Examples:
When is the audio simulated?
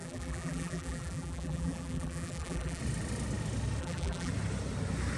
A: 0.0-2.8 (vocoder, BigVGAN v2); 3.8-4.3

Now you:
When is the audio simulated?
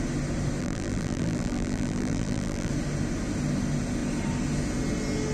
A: 0.6-2.7 (vocoder, BigVGAN v2)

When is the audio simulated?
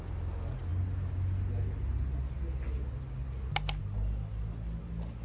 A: none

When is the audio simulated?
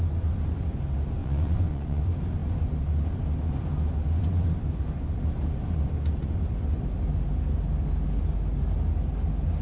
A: 1.2-2.0 (vocoder, Vocos)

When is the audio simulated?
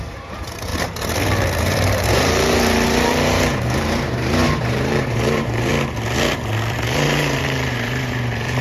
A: 0.0-0.7 (vocoder, BigVGAN v2); 1.6-5.7; 6.7-8.6